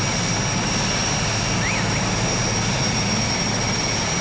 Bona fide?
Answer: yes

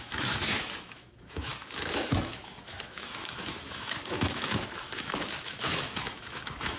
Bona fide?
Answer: no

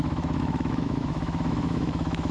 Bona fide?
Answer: no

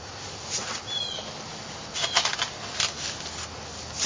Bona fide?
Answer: yes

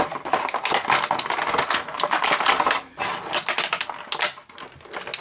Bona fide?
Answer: yes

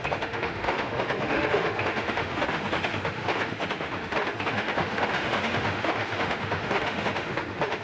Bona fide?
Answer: no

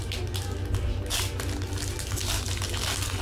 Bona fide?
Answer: yes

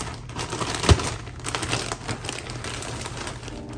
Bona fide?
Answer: yes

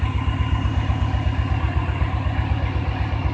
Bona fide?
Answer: yes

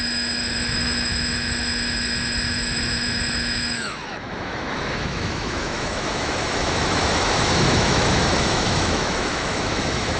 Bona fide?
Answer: no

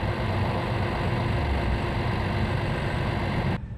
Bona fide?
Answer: yes